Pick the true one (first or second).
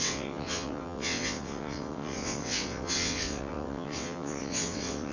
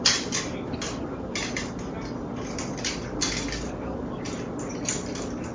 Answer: second